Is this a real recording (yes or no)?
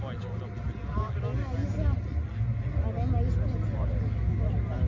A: yes